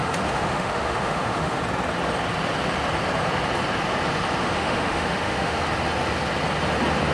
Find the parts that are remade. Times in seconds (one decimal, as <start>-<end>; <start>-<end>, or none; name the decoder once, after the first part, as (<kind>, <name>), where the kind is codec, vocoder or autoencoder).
0.0-1.6 (autoencoder, DAC-VAE); 4.4-5.6